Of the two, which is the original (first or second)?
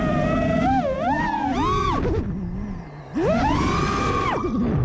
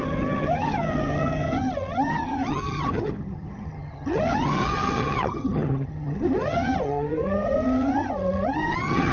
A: first